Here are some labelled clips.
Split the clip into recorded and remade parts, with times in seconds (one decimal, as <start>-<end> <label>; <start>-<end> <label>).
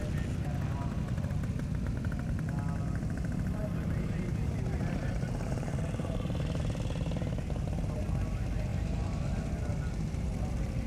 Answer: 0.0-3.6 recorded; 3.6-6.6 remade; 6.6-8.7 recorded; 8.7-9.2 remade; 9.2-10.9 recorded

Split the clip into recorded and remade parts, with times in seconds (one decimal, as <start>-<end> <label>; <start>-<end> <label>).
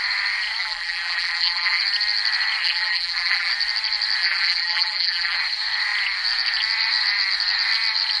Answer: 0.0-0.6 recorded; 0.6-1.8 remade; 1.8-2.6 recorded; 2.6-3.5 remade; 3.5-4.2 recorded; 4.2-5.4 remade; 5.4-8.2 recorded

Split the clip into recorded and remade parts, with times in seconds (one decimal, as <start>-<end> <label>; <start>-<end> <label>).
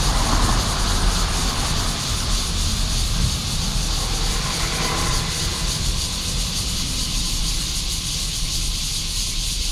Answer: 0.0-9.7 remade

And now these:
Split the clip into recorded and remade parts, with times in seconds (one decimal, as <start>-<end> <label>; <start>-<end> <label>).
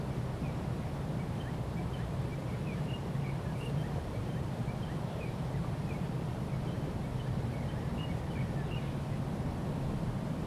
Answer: 0.0-2.3 recorded; 2.3-6.5 remade; 6.5-10.5 recorded